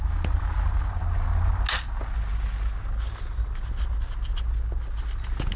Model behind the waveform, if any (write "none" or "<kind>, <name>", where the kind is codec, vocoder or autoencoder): none